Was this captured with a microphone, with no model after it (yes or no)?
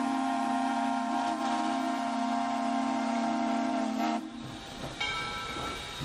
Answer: no